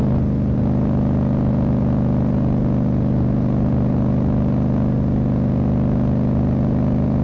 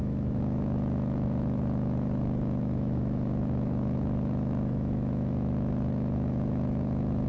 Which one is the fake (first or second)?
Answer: second